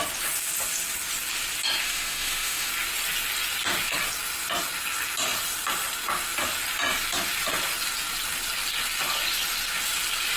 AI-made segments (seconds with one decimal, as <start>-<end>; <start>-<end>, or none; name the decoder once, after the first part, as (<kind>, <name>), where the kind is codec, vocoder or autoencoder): 1.8-2.7 (autoencoder, DAC-VAE)